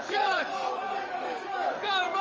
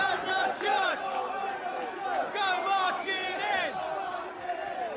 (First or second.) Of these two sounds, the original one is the second